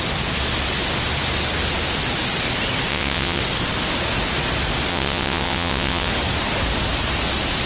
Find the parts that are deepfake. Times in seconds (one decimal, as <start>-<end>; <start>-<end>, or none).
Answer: 2.9-3.4; 4.9-6.1